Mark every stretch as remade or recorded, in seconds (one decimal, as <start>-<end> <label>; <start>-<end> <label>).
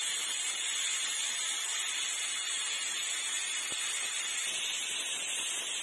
0.0-5.8 recorded